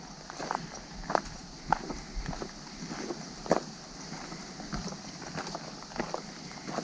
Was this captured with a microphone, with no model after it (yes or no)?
yes